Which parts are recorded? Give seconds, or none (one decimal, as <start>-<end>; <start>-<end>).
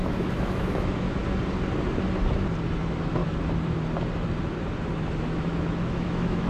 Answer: 1.2-2.8; 3.2-5.1